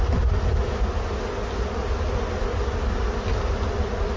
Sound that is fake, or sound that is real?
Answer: real